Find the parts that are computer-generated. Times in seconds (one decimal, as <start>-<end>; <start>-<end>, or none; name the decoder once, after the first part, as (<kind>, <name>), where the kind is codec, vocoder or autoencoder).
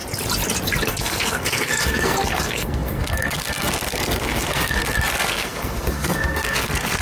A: 0.9-7.0 (codec, SNAC)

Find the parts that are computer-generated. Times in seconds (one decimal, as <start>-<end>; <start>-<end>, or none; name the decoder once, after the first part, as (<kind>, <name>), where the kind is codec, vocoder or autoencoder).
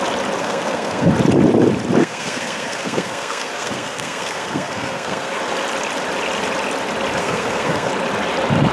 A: 0.4-1.1 (codec, SNAC); 2.0-5.4; 7.2-7.9